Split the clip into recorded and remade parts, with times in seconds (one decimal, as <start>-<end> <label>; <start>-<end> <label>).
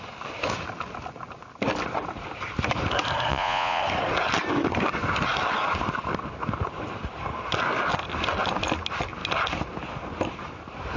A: 0.0-3.3 recorded; 3.3-3.8 remade; 3.8-11.0 recorded